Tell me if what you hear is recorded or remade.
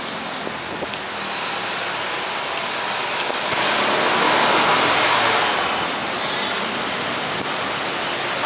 recorded